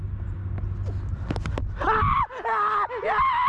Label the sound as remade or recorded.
recorded